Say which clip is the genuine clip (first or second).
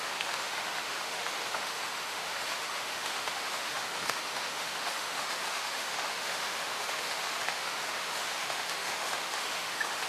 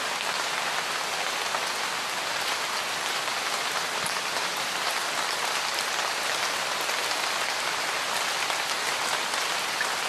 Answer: second